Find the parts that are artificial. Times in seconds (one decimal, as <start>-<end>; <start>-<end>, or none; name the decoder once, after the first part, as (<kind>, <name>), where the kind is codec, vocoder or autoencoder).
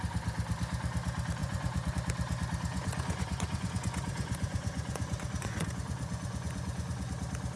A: 1.4-1.9 (vocoder, Vocos); 2.7-7.1